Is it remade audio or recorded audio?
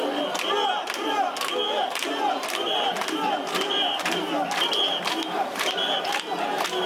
recorded